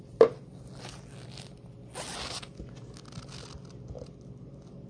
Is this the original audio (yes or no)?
yes